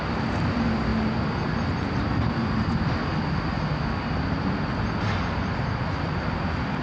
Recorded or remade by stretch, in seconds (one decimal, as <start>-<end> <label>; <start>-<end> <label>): 0.0-0.9 remade; 0.9-1.9 recorded; 1.9-3.0 remade; 3.0-6.2 recorded; 6.2-6.8 remade